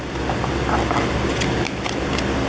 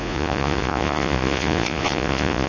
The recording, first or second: first